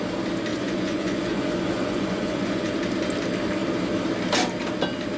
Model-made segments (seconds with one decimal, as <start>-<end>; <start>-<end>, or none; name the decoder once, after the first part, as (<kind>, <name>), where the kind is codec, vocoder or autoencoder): 0.5-2.7 (vocoder, Vocos)